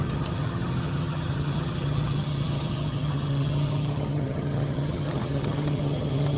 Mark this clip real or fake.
fake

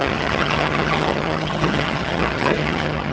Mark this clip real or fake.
fake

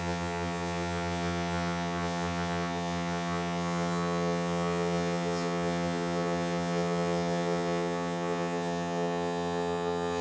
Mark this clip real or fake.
fake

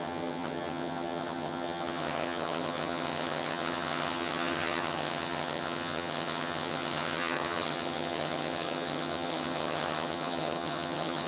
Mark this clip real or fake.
fake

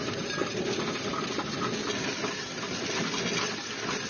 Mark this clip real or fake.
real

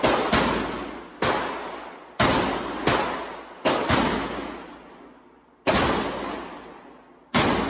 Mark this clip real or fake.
real